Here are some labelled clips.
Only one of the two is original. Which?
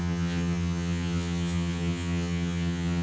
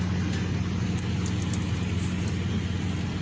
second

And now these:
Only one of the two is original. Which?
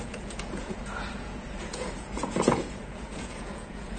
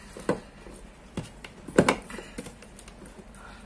second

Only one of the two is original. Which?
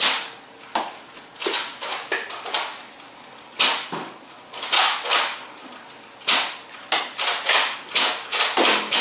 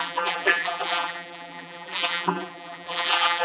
first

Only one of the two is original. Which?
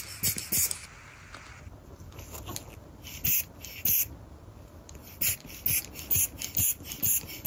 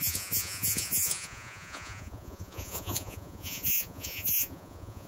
first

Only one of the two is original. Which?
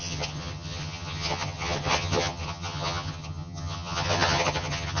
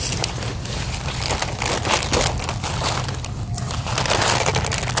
second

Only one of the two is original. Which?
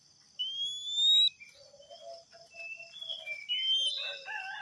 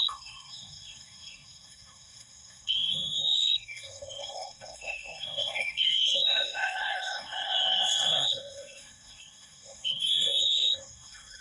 first